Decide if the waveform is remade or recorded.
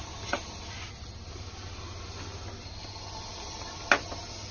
recorded